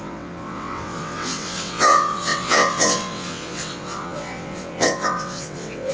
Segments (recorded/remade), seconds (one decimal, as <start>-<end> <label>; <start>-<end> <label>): 0.0-5.9 remade